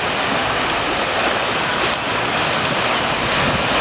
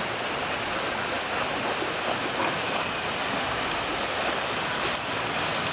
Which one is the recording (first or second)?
first